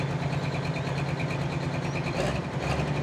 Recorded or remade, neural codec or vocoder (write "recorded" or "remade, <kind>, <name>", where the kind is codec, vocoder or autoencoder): recorded